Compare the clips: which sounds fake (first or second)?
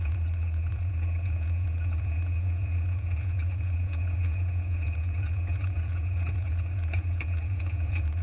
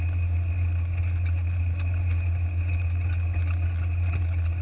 first